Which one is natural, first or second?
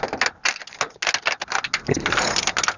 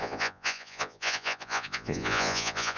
first